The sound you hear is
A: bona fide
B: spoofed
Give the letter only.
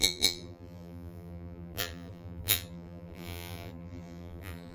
B